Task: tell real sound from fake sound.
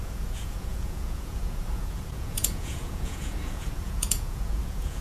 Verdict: fake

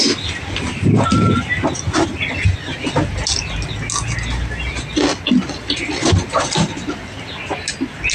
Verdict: real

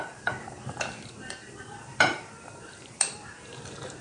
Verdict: fake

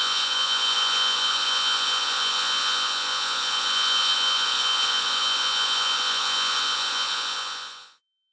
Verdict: fake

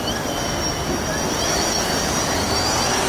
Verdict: real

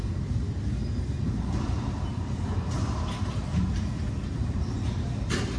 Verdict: fake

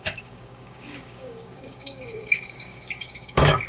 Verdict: fake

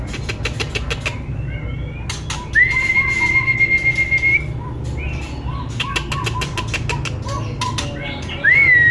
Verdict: real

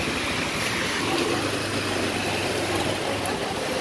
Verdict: real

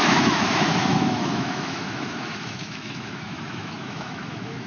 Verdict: fake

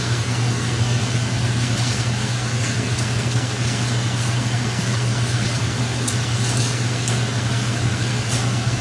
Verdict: fake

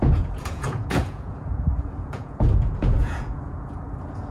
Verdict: fake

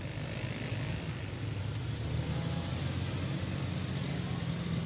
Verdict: real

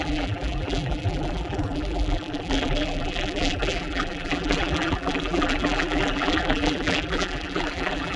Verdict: fake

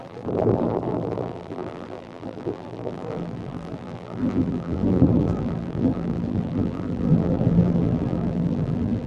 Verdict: fake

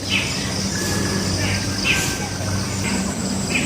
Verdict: real